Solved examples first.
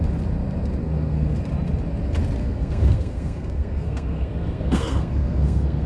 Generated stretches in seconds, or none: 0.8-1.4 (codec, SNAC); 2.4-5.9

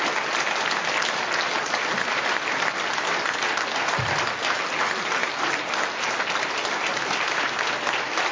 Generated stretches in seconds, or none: none

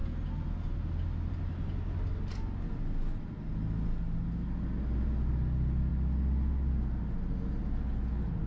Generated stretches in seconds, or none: none

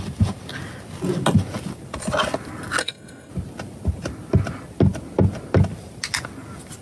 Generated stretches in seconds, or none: 2.8-3.3 (codec, SNAC)